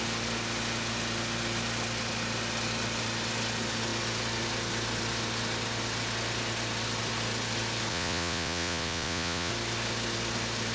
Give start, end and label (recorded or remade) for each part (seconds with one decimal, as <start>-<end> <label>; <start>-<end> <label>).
0.0-7.9 recorded; 7.9-9.5 remade; 9.5-10.7 recorded